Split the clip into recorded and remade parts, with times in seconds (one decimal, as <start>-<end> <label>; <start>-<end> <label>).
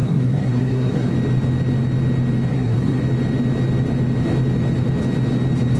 0.0-1.1 remade; 1.1-2.5 recorded; 2.5-3.0 remade; 3.0-5.8 recorded